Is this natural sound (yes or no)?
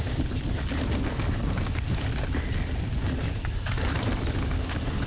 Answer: yes